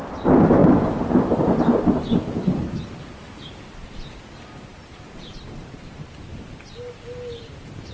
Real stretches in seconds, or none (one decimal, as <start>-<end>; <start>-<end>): 0.6-2.2; 6.3-7.3